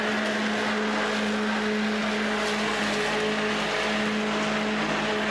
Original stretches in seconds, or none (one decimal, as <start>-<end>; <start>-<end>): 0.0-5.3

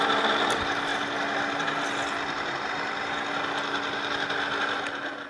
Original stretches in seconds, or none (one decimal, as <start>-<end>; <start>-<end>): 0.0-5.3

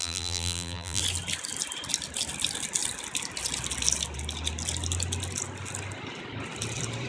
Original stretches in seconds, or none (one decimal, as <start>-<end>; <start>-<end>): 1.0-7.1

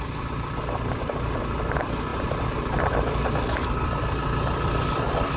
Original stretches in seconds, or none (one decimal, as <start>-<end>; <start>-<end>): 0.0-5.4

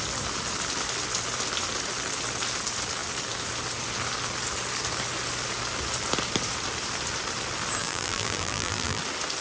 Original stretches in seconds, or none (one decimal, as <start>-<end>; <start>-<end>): 0.0-7.8; 9.0-9.4

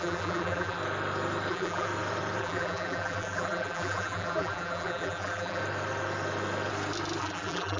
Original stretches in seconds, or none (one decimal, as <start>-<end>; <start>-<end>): 0.8-1.5; 1.9-2.4; 5.6-7.2

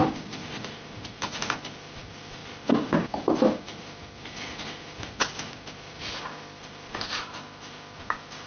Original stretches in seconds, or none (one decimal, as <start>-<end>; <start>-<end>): 2.4-6.2